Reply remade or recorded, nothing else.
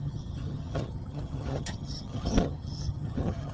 remade